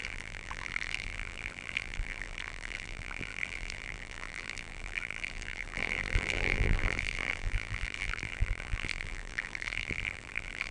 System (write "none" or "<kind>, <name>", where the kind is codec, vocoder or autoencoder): vocoder, BigVGAN v2